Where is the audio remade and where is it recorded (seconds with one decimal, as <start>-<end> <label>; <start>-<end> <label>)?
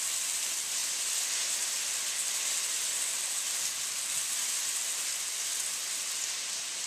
0.0-6.9 recorded